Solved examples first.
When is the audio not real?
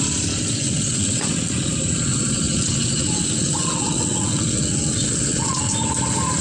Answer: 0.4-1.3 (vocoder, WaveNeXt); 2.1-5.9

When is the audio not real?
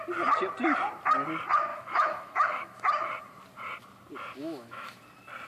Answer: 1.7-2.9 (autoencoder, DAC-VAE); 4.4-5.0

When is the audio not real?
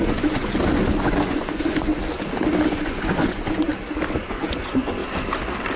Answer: 0.0-0.5 (vocoder, Vocos); 1.0-1.9; 2.7-3.7; 4.2-5.0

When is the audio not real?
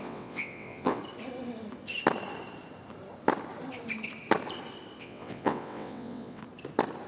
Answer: 0.0-1.0 (vocoder, WaveNeXt); 5.0-6.4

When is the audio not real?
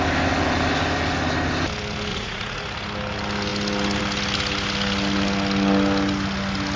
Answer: 2.1-2.6 (vocoder, Vocos)